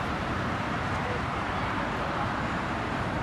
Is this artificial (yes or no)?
yes